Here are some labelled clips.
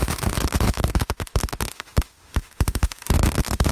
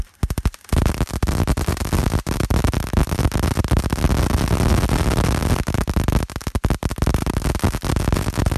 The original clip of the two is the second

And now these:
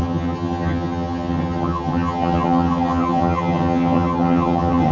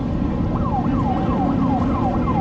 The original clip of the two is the second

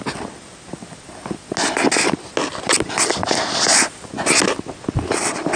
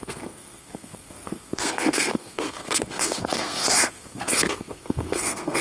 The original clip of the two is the first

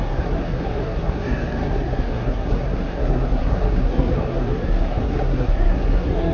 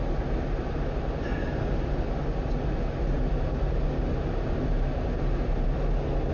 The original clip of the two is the second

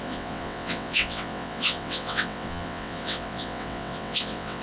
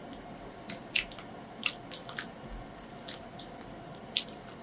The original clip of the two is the second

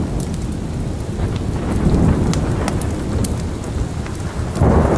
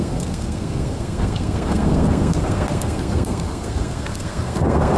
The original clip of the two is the first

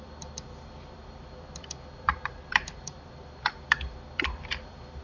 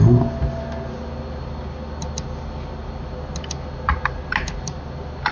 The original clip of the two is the second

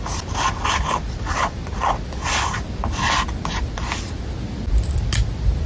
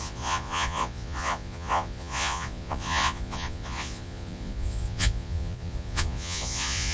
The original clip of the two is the first